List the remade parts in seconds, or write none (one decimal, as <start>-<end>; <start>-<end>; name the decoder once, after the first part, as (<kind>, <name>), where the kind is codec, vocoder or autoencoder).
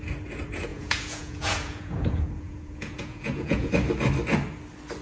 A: 0.7-3.7 (vocoder, Vocos)